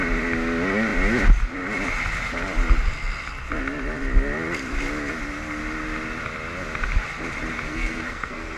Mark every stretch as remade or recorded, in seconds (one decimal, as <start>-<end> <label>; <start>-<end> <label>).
0.0-7.7 recorded; 7.7-8.6 remade